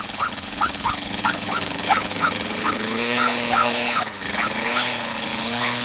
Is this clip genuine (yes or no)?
no